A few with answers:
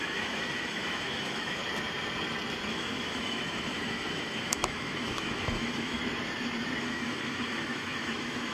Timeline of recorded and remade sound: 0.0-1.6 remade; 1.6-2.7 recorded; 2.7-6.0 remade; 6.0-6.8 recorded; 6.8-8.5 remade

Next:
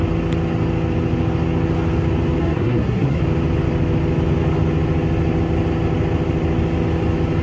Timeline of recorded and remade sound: 0.0-2.4 recorded; 2.4-3.2 remade; 3.2-7.4 recorded

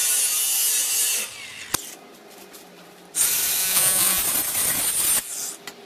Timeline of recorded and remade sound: 0.0-3.6 recorded; 3.6-4.2 remade; 4.2-5.9 recorded